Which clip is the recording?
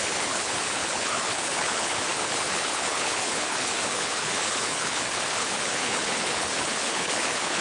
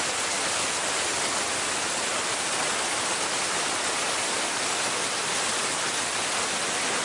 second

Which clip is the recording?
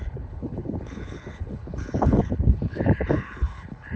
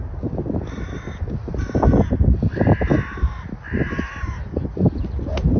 second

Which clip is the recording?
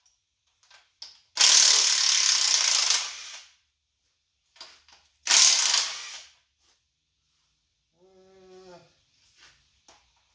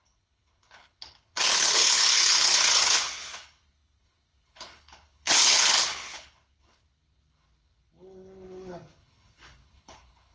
first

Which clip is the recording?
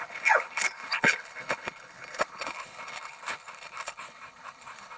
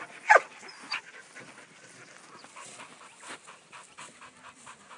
second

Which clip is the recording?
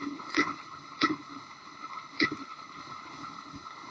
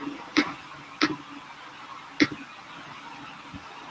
second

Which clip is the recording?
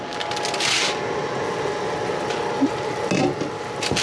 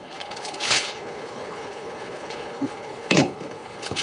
first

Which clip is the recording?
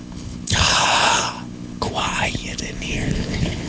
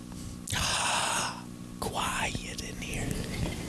second